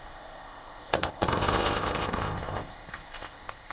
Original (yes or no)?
no